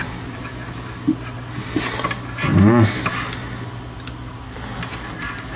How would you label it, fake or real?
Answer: real